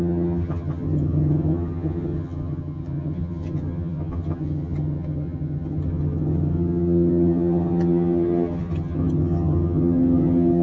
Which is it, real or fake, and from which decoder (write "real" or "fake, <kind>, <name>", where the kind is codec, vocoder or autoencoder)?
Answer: fake, vocoder, HiFi-GAN